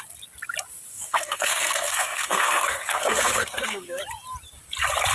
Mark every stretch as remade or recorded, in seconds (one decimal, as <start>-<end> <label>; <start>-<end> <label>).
0.0-0.9 recorded; 0.9-4.0 remade; 4.0-5.1 recorded